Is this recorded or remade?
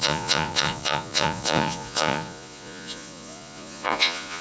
remade